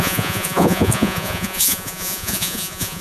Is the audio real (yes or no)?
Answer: no